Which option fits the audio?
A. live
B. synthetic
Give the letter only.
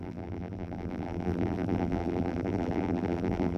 B